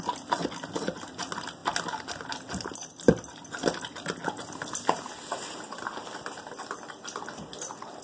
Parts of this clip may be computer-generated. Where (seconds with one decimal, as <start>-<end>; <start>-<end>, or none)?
none

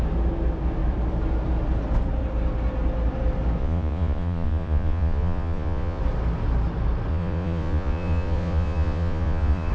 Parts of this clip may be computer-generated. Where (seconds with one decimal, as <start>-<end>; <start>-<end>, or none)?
3.6-6.0; 7.1-9.7

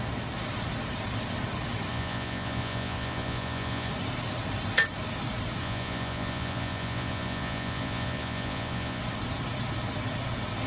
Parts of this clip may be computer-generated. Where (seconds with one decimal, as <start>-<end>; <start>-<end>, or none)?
1.9-3.9; 5.6-9.0

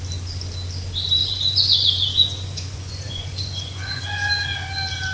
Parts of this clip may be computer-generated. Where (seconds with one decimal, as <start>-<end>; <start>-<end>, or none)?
1.2-4.3

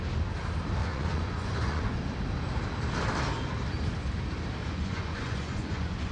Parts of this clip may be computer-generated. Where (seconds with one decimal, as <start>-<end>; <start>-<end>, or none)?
0.8-2.0; 4.6-6.1